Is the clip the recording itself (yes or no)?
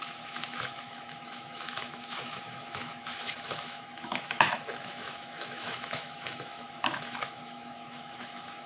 no